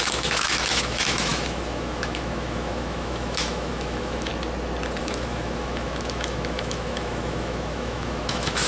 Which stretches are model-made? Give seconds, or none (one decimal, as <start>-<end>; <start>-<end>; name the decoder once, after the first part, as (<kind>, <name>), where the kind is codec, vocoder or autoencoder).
0.0-4.3 (autoencoder, DAC-VAE); 5.0-8.7